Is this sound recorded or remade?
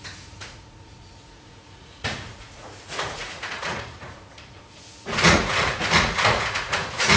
remade